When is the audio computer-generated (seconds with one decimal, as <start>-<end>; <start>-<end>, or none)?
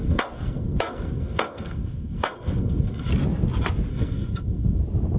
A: 0.0-3.1; 3.9-4.8